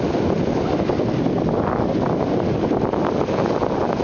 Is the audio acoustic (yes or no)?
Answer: yes